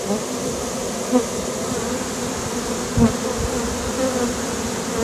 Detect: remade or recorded recorded